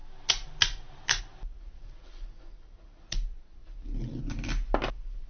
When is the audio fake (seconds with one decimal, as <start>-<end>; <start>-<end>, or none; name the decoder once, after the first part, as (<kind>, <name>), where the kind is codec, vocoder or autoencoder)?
none